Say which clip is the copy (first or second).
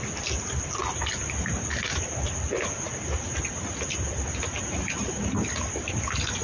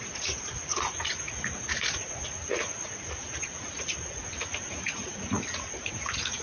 second